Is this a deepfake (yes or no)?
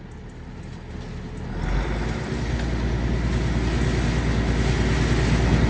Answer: no